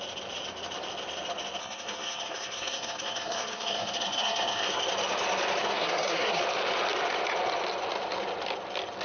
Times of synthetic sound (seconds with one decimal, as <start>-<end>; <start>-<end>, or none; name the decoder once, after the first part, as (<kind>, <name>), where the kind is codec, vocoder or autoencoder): 1.6-4.8 (codec, SNAC); 5.6-6.4